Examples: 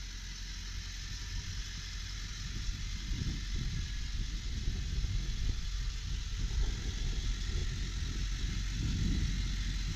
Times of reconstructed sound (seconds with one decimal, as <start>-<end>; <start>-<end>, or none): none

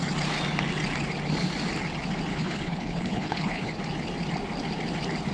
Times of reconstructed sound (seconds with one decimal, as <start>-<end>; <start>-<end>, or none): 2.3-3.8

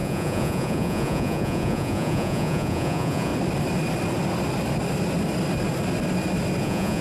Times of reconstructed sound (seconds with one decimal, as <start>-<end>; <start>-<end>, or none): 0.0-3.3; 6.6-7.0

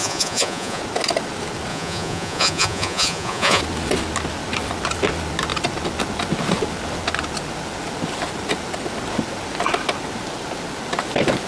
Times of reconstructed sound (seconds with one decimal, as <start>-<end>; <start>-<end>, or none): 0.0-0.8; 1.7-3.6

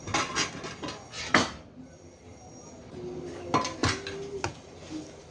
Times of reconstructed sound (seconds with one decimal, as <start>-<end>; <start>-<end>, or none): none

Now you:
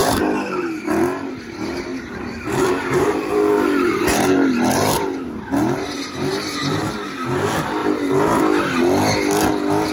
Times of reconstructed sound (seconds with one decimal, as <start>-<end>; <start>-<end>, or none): 0.0-1.3; 1.9-6.9

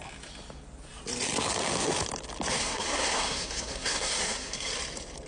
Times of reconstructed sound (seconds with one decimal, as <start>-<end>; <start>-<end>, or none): 2.6-4.7

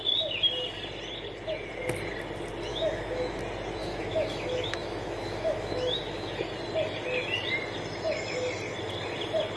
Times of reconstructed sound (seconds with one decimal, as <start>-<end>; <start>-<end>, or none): 2.7-3.4; 3.8-6.4